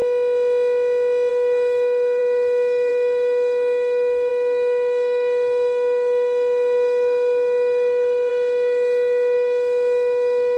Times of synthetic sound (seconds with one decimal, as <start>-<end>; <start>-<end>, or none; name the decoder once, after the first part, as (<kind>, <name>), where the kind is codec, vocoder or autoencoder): 1.3-10.6 (codec, DAC)